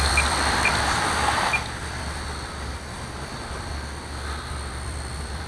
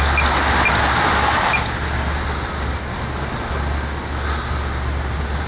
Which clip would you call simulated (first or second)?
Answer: first